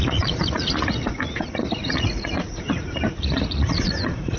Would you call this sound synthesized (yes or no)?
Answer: yes